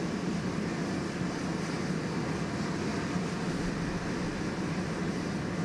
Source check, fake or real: real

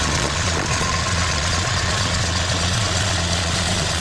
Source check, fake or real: fake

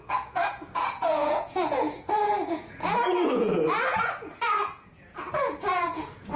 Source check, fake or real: fake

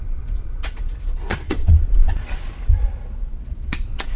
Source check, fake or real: fake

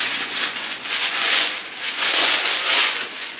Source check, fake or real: fake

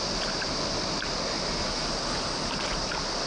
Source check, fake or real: real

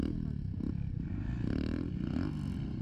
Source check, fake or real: real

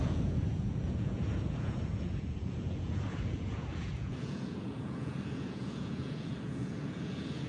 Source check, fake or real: fake